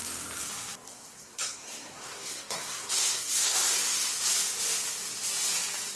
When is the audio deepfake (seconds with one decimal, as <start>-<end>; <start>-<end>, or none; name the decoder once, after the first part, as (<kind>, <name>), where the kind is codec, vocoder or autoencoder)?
0.9-4.1 (codec, SNAC)